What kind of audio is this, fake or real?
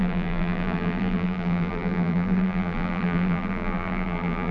fake